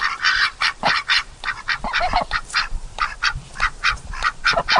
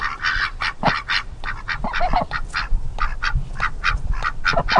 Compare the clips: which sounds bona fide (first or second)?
second